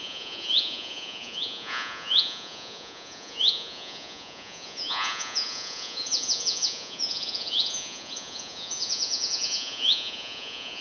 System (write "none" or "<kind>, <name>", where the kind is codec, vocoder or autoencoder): vocoder, Vocos